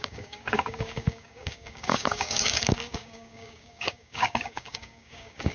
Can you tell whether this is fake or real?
fake